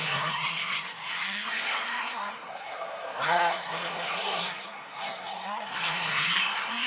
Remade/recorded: remade